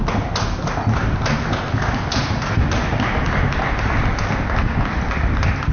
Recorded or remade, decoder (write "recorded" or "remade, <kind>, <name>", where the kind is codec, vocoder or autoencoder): recorded